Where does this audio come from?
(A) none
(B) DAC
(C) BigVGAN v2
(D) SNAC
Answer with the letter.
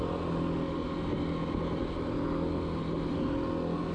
A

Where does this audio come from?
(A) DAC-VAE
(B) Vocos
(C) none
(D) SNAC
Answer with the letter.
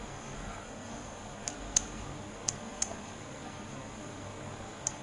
D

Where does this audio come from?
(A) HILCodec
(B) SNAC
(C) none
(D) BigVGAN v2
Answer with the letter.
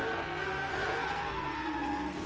B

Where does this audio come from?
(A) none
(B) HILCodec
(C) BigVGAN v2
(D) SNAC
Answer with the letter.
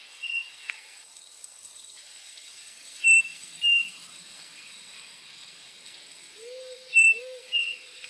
D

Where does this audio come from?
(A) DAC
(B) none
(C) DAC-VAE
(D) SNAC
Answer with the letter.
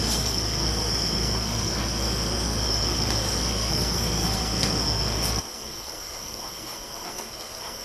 D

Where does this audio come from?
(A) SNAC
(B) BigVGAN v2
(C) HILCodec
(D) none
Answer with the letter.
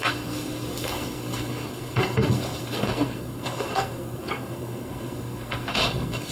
A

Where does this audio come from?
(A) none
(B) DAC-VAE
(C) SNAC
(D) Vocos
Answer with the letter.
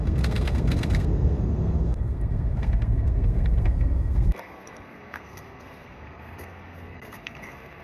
C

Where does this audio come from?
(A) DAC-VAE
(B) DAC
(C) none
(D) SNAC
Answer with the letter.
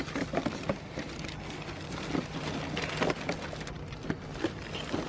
C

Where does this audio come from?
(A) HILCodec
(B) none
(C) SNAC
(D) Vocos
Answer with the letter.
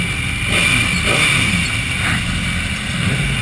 B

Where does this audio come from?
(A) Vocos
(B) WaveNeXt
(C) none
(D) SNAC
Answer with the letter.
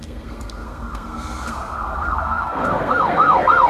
D